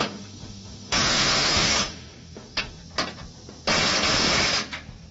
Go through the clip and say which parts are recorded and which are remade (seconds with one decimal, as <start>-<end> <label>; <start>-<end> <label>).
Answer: 0.0-2.8 remade; 2.8-5.1 recorded